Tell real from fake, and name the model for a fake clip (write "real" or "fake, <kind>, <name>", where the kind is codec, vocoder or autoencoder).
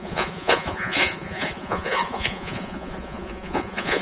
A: fake, vocoder, Vocos